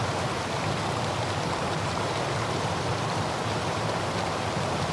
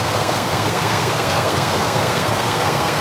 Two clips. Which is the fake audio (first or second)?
second